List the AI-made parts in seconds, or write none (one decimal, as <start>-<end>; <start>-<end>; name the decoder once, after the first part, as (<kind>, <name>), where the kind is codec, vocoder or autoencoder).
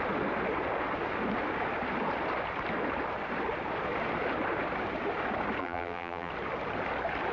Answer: 5.6-6.3 (vocoder, BigVGAN v2)